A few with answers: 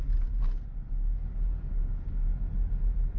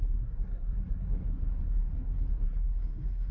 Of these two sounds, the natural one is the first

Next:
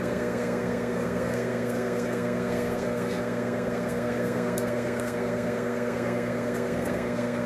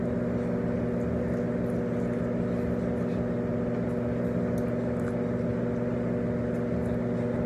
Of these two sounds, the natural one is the second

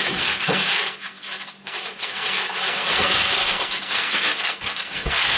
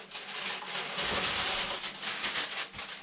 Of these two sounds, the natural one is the second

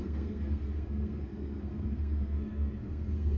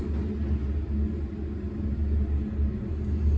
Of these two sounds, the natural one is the second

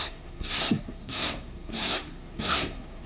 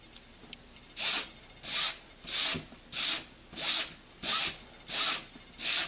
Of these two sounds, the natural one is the second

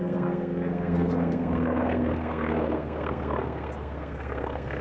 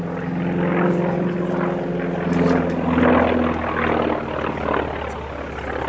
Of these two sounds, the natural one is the second